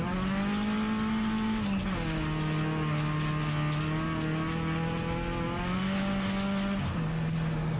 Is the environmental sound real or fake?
real